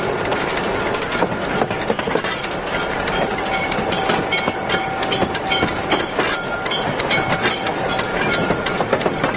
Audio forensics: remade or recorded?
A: recorded